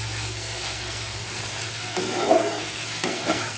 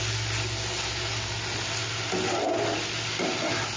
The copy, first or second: first